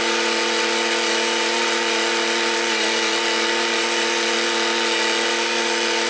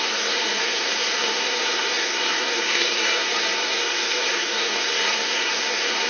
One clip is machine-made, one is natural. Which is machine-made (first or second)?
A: second